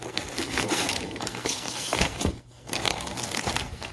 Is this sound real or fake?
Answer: fake